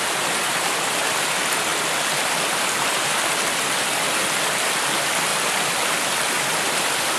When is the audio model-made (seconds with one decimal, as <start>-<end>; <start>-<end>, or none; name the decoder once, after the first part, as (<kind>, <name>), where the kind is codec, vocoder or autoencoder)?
none